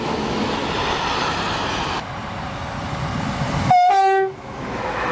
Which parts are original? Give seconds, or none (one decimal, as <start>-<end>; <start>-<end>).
0.6-3.7